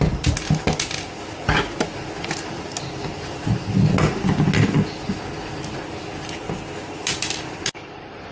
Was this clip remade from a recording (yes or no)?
no